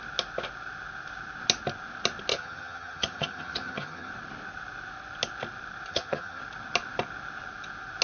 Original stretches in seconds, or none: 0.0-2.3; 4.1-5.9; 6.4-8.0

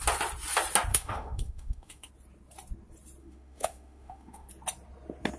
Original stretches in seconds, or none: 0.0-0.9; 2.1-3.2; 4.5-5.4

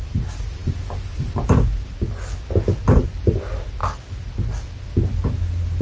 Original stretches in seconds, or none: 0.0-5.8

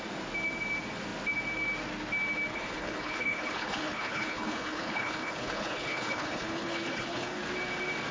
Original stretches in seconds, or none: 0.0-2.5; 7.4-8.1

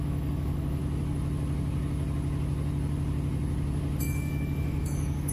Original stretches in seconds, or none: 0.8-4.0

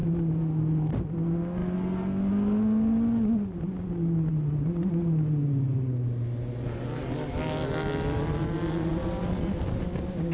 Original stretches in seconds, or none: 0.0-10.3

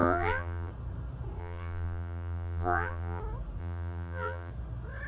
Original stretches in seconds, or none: 0.7-1.4; 3.2-3.6; 4.5-5.1

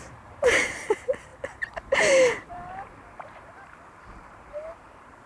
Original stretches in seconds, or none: none